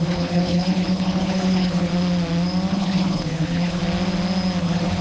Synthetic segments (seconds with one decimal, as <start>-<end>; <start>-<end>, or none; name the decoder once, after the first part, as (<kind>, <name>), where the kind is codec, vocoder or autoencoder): 0.0-1.9 (codec, HILCodec); 2.7-3.8; 4.6-5.0